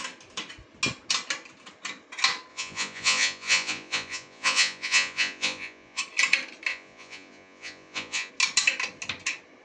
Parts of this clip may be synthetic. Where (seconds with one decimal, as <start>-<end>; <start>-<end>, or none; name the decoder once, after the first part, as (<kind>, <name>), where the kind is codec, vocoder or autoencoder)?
2.5-6.0 (vocoder, Vocos); 6.7-8.3